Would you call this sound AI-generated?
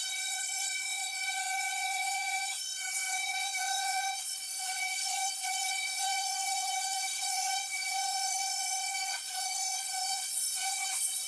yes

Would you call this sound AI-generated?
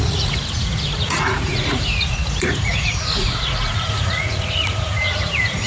yes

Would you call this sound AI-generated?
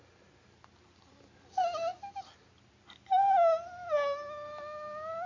no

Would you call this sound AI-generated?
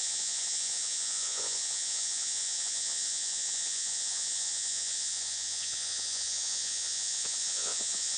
yes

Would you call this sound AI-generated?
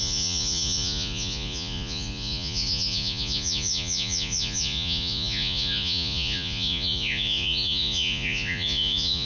yes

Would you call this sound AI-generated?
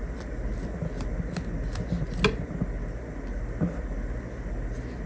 no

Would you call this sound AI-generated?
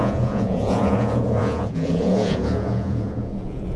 yes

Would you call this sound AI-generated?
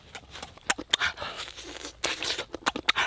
no